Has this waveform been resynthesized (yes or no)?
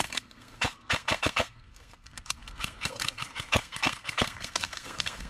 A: yes